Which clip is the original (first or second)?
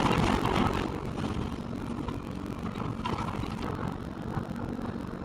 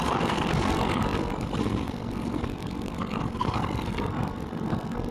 first